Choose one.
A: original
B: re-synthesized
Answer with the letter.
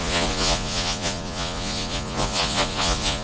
B